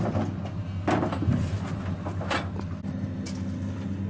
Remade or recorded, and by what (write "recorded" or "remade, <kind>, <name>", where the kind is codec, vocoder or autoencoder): recorded